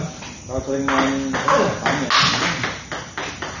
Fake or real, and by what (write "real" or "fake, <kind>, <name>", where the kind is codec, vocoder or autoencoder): real